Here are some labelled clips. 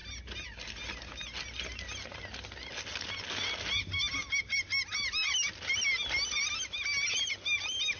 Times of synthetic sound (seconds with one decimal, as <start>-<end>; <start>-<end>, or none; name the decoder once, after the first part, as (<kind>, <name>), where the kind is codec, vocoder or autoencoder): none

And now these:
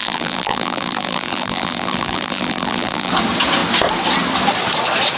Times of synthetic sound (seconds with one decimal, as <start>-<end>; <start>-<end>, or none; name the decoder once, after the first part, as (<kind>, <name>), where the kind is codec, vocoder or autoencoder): 0.0-3.1 (vocoder, BigVGAN v2)

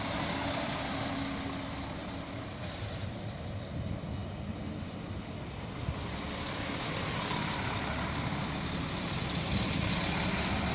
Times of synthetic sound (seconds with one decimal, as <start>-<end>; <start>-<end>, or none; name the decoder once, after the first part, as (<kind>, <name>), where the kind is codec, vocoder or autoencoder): none

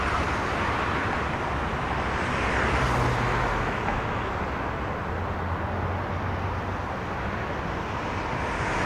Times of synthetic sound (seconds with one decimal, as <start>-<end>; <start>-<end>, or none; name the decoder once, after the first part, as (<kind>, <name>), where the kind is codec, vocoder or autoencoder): 3.3-4.3 (autoencoder, DAC-VAE)

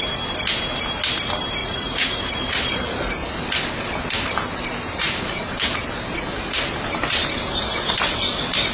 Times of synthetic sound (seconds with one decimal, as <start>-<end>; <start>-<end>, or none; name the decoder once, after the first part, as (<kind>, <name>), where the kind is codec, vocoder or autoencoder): 1.6-2.2 (vocoder, Vocos)

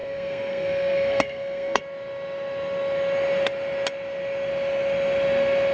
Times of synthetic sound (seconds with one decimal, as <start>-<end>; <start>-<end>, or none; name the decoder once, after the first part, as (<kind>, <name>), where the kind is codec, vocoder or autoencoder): 0.0-1.8 (codec, SNAC)